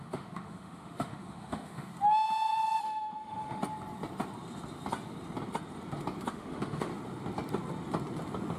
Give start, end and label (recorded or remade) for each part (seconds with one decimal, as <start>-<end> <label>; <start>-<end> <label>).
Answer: 0.0-1.9 remade; 1.9-2.8 recorded; 2.8-3.6 remade; 3.6-6.3 recorded; 6.3-6.9 remade; 6.9-8.6 recorded